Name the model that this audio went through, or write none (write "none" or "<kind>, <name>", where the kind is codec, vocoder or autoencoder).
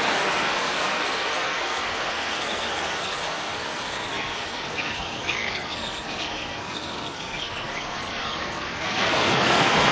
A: codec, SNAC